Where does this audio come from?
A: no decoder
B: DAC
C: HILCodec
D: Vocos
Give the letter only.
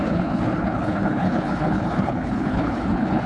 C